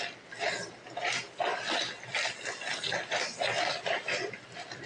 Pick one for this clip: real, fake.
real